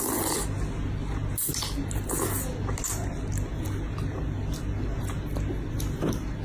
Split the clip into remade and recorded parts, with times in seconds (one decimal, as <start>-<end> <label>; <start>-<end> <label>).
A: 0.0-6.4 recorded